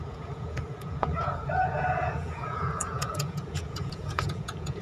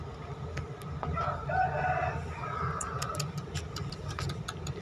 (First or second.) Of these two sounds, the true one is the second